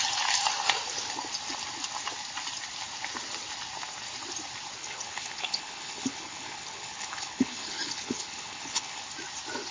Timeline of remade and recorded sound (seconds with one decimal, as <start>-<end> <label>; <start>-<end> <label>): 0.0-4.8 recorded; 4.8-9.0 remade; 9.0-9.7 recorded